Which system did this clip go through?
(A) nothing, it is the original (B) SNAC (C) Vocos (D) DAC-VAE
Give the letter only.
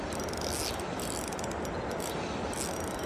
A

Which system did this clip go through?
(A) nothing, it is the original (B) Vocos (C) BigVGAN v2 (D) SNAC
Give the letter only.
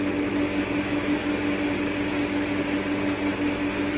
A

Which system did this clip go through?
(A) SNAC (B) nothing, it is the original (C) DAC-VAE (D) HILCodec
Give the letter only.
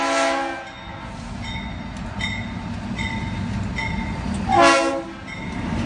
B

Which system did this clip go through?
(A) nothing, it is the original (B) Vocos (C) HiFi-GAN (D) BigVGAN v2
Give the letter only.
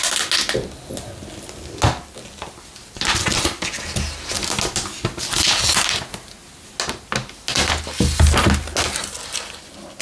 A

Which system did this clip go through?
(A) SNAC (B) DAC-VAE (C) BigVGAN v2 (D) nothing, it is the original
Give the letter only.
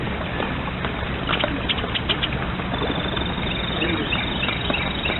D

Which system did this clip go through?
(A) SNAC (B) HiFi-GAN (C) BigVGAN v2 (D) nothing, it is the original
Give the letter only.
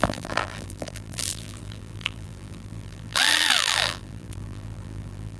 C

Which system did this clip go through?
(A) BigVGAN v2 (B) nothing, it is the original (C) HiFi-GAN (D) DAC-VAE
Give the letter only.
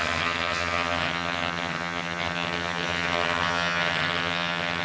C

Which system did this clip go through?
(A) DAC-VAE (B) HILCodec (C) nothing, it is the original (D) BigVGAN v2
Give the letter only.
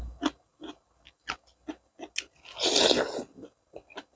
C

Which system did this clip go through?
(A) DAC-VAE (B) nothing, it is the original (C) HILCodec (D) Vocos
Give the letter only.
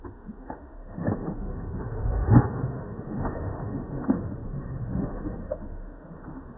A